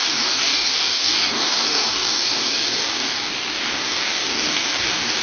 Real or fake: fake